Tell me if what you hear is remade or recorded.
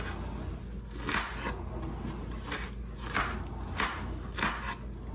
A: recorded